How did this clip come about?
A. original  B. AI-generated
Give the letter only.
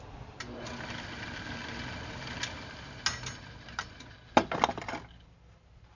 A